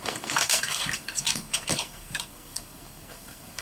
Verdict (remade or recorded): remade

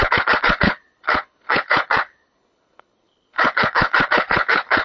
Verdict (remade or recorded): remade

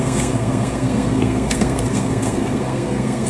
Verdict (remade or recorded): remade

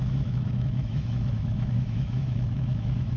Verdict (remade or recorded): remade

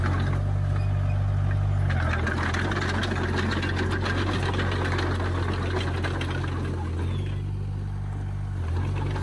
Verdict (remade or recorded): recorded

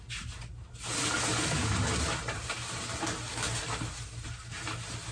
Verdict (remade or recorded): recorded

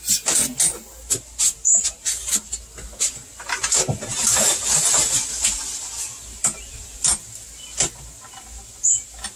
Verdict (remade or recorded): recorded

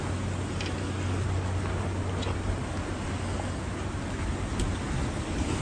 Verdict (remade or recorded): recorded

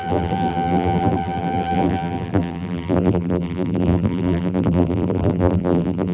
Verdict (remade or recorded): remade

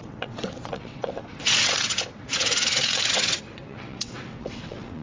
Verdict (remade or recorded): remade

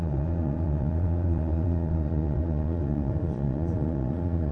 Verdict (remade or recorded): remade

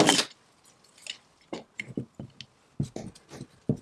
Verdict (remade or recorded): recorded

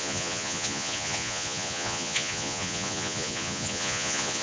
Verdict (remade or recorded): remade